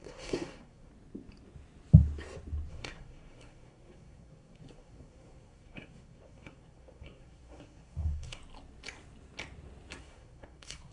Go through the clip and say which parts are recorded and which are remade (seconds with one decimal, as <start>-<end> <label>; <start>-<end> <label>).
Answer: 0.0-0.9 remade; 0.9-2.7 recorded; 2.7-8.4 remade; 8.4-10.0 recorded; 10.0-10.9 remade